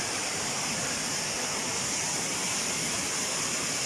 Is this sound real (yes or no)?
no